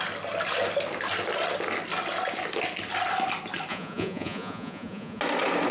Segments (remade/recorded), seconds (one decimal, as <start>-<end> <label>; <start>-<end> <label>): 0.0-3.7 recorded; 3.7-5.2 remade; 5.2-5.7 recorded